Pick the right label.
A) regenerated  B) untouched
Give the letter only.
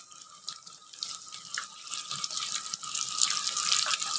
B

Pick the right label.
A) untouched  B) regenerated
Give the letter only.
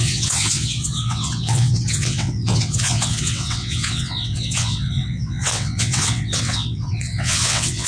B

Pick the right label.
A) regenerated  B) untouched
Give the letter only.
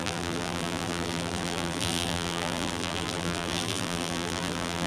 A